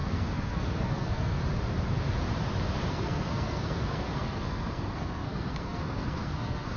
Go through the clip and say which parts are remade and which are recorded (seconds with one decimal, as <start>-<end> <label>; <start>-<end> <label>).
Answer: 0.0-1.4 remade; 1.4-2.9 recorded; 2.9-6.8 remade